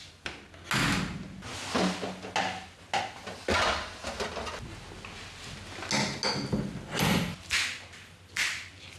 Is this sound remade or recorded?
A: recorded